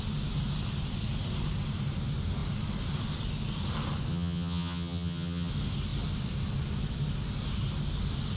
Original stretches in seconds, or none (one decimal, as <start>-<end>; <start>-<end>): 0.0-4.1; 5.5-8.4